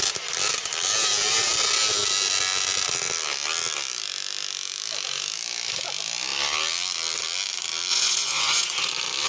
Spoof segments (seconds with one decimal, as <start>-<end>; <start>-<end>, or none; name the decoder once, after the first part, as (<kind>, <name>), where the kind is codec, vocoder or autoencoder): 7.9-8.9 (vocoder, Vocos)